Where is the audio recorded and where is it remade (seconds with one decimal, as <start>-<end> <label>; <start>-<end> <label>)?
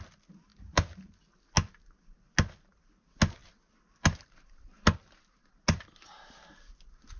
0.0-7.2 recorded